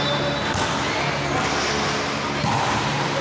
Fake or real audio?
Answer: real